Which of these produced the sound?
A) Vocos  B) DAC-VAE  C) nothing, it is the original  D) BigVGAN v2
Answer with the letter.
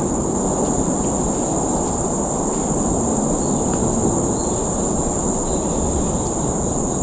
C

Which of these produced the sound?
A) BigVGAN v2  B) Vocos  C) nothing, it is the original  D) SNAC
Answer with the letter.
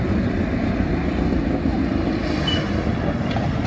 C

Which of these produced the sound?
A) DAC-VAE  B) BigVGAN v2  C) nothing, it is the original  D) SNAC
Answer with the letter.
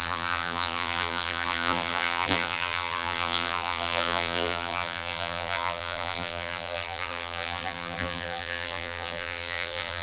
B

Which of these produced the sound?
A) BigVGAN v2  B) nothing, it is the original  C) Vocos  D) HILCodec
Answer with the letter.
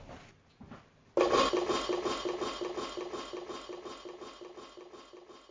B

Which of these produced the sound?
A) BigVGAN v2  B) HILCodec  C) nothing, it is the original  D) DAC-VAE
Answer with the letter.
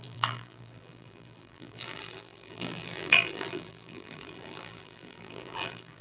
A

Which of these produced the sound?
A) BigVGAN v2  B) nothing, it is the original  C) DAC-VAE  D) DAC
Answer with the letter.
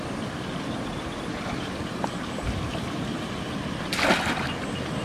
B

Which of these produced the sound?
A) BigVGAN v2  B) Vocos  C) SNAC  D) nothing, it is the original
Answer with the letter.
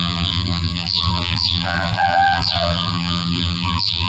A